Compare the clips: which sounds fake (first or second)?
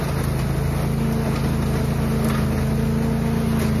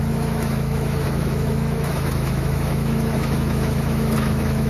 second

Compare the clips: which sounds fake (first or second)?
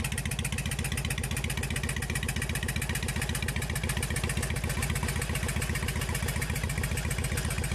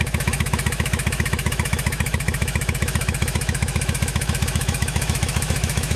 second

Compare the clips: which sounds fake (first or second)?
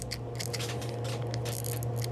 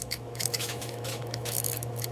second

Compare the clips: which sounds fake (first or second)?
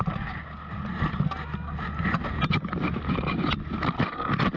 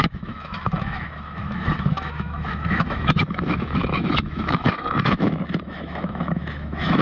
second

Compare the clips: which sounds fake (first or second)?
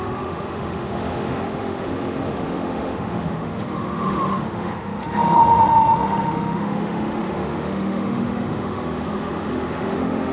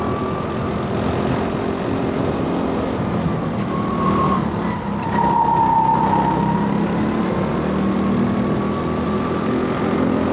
first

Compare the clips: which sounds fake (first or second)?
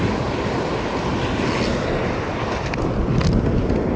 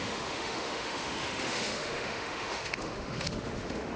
second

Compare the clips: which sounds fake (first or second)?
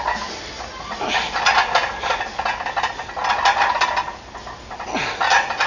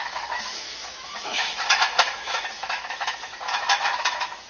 second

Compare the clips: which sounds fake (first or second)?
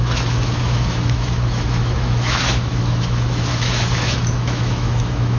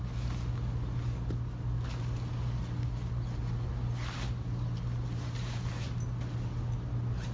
first